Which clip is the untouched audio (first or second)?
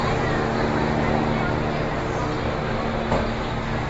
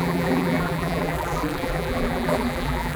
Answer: first